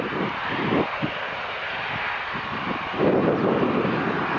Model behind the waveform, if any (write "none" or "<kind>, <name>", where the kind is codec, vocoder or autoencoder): none